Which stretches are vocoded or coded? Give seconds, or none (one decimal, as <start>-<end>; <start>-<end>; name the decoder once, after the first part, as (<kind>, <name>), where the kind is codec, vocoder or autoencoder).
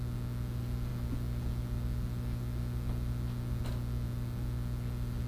none